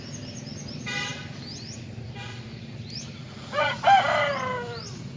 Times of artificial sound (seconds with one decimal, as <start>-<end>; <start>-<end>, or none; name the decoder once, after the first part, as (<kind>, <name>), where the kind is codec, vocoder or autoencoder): 3.2-3.8 (vocoder, Vocos)